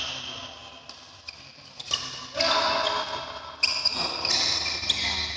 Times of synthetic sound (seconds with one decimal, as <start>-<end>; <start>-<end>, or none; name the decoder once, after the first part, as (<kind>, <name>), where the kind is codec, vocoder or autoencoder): none